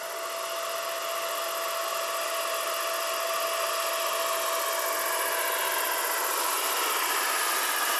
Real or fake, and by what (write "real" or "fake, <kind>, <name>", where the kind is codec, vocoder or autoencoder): real